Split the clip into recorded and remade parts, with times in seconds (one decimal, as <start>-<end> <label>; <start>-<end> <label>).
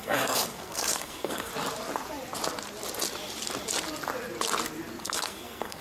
0.0-1.5 remade; 1.5-5.0 recorded; 5.0-5.8 remade